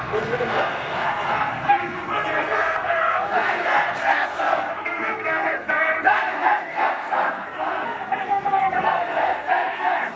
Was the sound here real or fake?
fake